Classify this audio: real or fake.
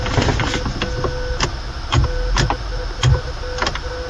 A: real